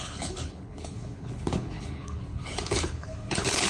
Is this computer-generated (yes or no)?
yes